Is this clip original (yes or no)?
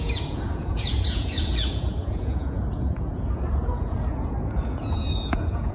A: no